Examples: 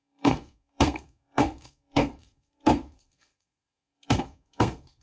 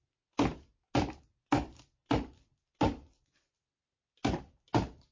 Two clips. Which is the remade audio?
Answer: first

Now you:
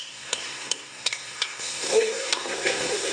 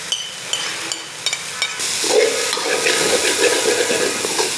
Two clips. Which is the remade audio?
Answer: first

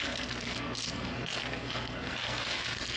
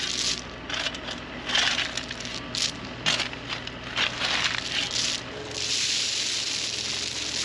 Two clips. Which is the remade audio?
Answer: first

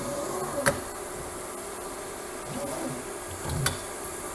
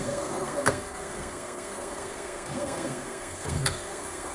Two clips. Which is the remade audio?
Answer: second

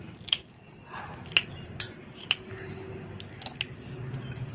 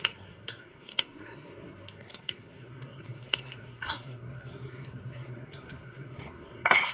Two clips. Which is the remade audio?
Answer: second